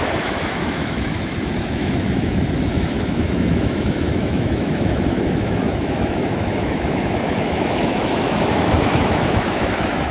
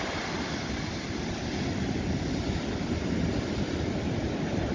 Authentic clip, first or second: second